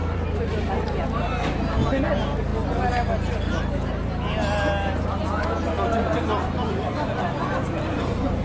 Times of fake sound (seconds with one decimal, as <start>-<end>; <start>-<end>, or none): 0.0-0.7